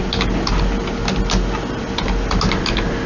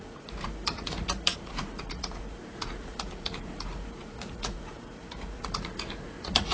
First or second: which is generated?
second